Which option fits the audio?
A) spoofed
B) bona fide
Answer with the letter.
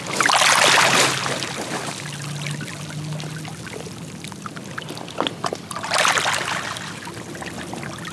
B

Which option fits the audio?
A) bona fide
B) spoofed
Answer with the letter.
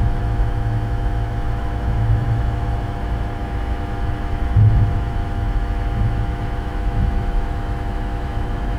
B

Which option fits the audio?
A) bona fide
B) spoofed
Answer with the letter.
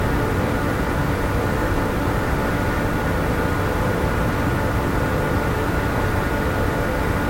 A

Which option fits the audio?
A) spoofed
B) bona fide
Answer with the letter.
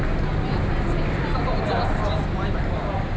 B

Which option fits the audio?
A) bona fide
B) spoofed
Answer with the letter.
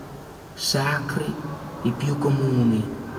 A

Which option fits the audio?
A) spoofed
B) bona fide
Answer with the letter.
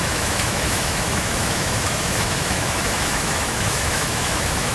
A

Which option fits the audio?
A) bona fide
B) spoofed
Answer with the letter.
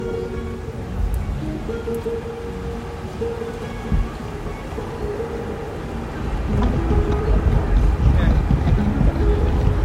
A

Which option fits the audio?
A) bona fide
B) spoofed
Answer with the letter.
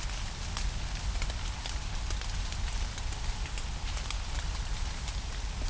A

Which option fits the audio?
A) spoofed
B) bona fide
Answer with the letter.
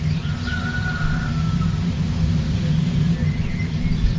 B